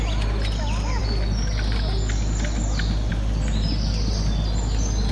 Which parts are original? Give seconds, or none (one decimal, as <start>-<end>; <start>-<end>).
0.0-5.1